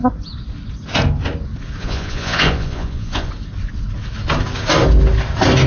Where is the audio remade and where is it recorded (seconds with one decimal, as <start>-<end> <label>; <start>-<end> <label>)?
0.0-1.8 recorded; 1.8-3.3 remade; 3.3-5.7 recorded